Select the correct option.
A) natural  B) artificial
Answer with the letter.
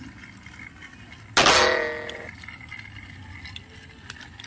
A